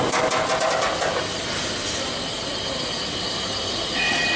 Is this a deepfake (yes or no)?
no